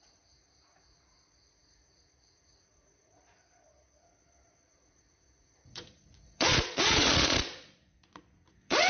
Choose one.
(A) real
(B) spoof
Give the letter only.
B